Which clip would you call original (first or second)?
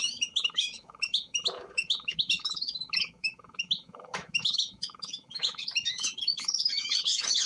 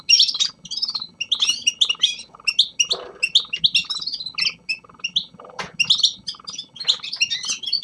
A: second